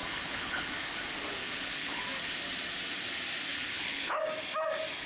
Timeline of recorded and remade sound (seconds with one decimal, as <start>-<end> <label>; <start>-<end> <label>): 0.0-0.7 remade; 0.7-1.4 recorded; 1.4-2.0 remade; 2.0-3.5 recorded; 3.5-4.2 remade; 4.2-5.1 recorded